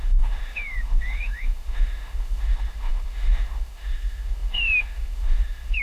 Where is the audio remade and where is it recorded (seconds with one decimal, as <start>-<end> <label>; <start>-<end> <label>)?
0.0-5.8 remade